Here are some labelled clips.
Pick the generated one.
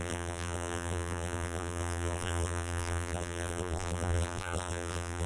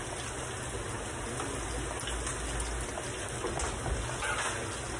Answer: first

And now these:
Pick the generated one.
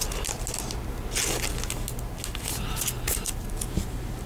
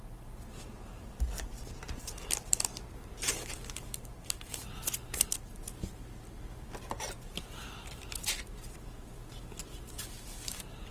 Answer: second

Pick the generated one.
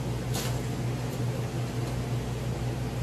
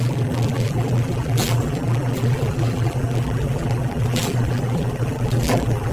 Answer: second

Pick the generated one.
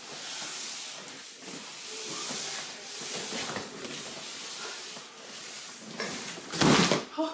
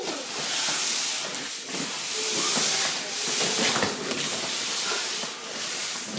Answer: second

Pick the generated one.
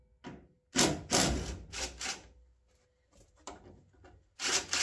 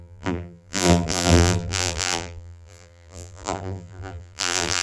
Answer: second